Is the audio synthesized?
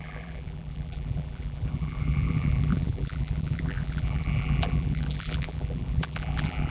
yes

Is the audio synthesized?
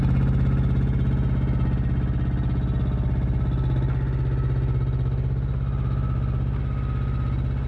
no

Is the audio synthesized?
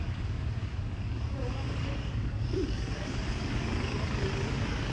yes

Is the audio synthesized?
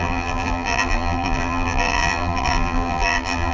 yes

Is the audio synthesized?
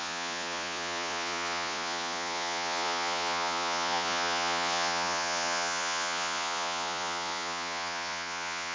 yes